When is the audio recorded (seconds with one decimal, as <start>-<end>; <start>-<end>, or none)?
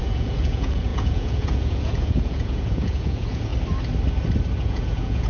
3.5-4.5